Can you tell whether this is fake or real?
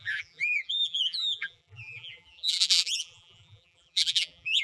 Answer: fake